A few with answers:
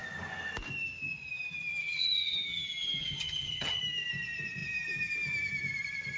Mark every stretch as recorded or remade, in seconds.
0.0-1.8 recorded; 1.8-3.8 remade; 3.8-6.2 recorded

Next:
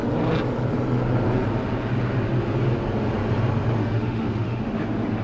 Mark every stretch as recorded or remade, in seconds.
0.0-3.8 recorded; 3.8-4.7 remade; 4.7-5.2 recorded

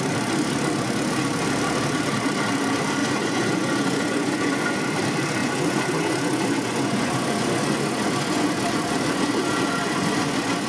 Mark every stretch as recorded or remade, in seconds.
0.0-3.0 recorded; 3.0-4.8 remade; 4.8-5.4 recorded; 5.4-10.7 remade

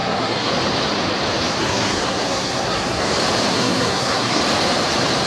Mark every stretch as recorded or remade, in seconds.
0.0-0.5 remade; 0.5-1.6 recorded; 1.6-3.1 remade; 3.1-3.5 recorded; 3.5-4.4 remade; 4.4-5.3 recorded